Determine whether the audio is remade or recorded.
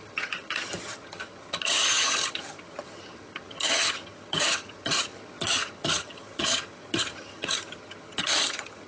remade